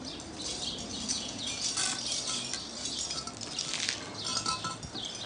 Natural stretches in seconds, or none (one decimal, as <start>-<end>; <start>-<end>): 0.0-1.1; 1.7-5.3